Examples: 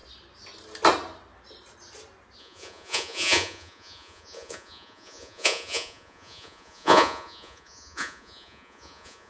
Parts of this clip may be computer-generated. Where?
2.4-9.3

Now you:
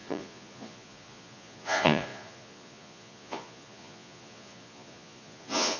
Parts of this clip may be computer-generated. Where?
0.0-5.8

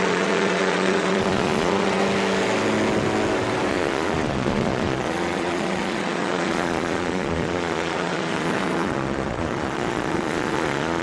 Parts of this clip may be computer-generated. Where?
0.0-2.0; 3.7-11.0

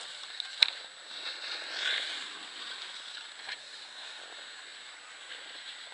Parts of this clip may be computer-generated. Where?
3.6-4.2